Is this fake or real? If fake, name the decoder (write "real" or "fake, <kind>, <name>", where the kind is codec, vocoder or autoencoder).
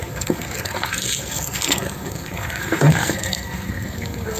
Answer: fake, codec, SNAC